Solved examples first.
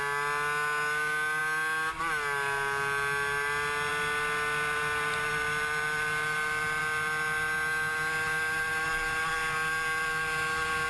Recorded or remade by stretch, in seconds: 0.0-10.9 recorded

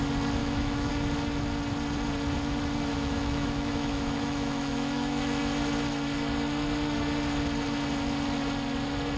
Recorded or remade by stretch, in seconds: 0.0-0.4 recorded; 0.4-0.9 remade; 0.9-2.9 recorded; 2.9-5.4 remade; 5.4-9.2 recorded

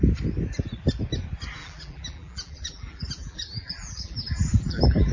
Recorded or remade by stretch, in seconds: 0.0-1.6 recorded; 1.6-5.1 remade

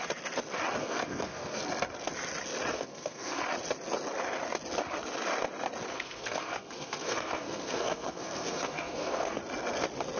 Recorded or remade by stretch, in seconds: 0.0-0.8 recorded; 0.8-1.6 remade; 1.6-2.7 recorded; 2.7-3.4 remade; 3.4-5.9 recorded; 5.9-9.4 remade; 9.4-10.2 recorded

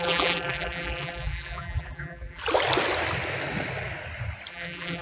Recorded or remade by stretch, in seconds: 0.0-2.4 remade; 2.4-4.5 recorded; 4.5-5.0 remade

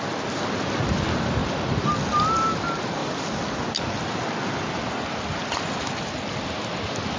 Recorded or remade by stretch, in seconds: 0.0-7.2 recorded

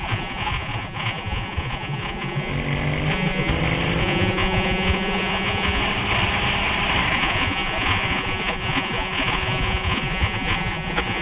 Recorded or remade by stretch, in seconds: 0.0-2.5 remade; 2.5-3.1 recorded; 3.1-3.5 remade; 3.5-4.0 recorded; 4.0-5.8 remade; 5.8-7.1 recorded; 7.1-11.2 remade